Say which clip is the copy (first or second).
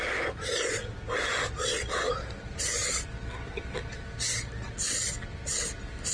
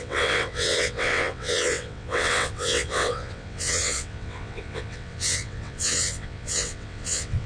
second